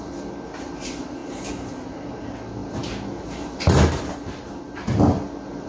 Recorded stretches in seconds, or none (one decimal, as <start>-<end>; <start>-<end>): 0.0-5.7